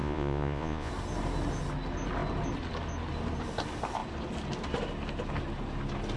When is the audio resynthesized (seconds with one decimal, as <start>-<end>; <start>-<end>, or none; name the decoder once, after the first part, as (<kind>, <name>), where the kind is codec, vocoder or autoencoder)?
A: 0.0-0.9 (vocoder, Vocos)